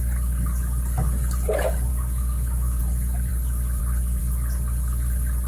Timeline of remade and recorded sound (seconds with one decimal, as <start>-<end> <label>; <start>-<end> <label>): 0.0-1.9 recorded; 1.9-2.8 remade; 2.8-5.5 recorded